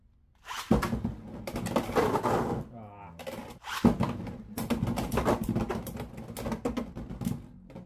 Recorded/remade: recorded